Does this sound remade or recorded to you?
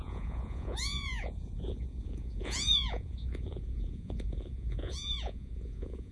remade